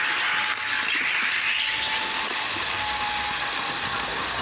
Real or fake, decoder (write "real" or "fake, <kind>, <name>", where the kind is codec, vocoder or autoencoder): real